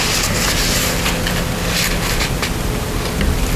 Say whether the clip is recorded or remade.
recorded